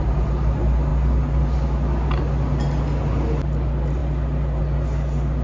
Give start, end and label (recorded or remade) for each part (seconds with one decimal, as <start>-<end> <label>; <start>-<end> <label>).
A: 0.0-5.4 recorded